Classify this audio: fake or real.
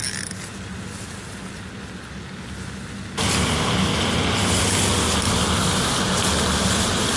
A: real